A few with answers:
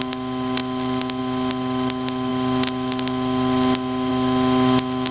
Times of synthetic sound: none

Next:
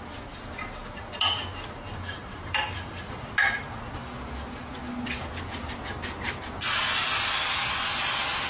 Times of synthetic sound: 0.8-3.6 (vocoder, BigVGAN v2)

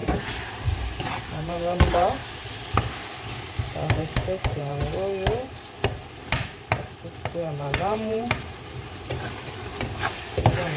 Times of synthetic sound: 0.0-2.2 (vocoder, BigVGAN v2); 4.0-4.8; 5.9-10.8

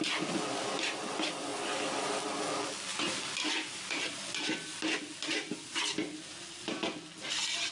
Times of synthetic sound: none

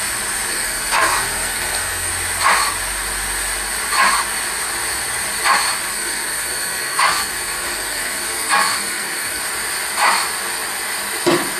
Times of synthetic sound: 0.5-2.1 (codec, SNAC); 5.9-9.4

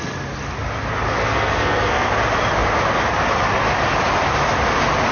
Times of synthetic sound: 1.2-2.1 (codec, SNAC)

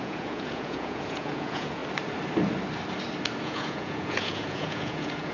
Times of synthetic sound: 0.0-1.8 (vocoder, Vocos); 3.4-5.3

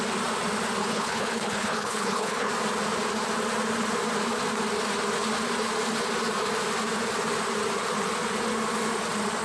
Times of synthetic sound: 0.8-2.5 (codec, HILCodec)